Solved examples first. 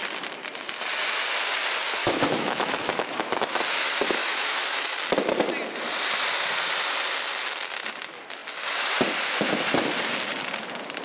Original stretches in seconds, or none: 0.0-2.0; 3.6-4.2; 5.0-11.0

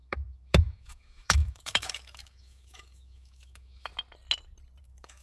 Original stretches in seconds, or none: 3.9-4.8

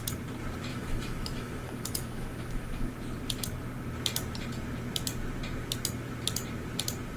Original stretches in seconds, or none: 0.0-0.7; 2.9-7.2

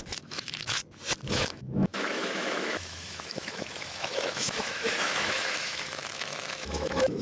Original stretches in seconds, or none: 0.8-1.3

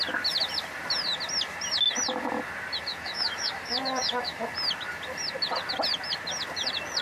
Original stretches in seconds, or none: 0.0-2.9; 4.5-7.0

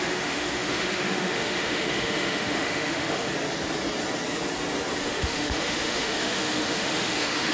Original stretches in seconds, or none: 3.3-5.0

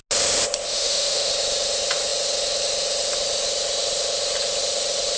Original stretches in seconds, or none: 0.0-0.7; 1.3-5.2

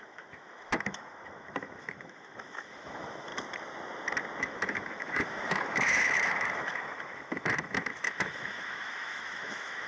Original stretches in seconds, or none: 3.3-4.4